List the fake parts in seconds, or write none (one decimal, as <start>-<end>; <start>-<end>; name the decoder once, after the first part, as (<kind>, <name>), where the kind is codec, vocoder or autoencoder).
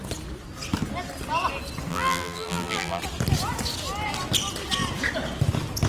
1.9-3.0 (vocoder, BigVGAN v2)